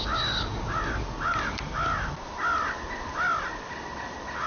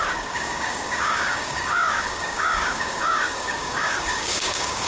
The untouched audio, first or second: first